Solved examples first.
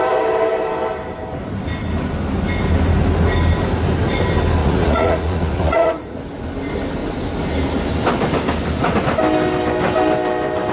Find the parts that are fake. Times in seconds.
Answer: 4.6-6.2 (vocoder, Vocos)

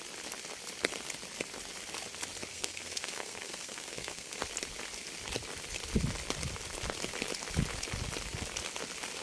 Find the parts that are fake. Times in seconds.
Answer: 2.5-4.4 (codec, SNAC)

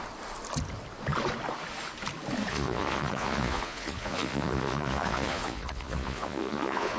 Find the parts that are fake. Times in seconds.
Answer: 2.5-7.0 (vocoder, Vocos)

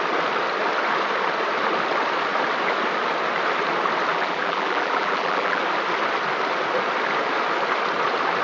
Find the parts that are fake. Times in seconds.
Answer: 4.1-5.6 (vocoder, BigVGAN v2)

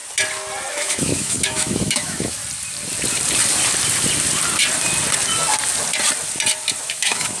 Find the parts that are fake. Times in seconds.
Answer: 0.7-2.4 (autoencoder, DAC-VAE); 6.8-7.4

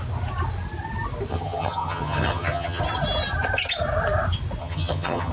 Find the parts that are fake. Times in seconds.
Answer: 1.3-2.8 (vocoder, HiFi-GAN); 4.6-5.3